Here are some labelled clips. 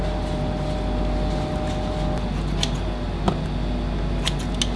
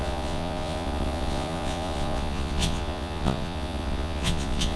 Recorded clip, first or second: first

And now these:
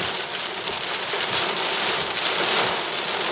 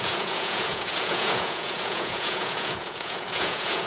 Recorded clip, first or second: first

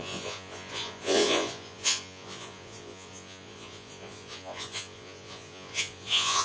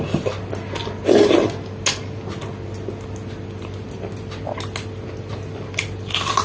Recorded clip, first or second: second